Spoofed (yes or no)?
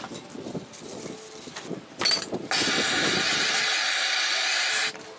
no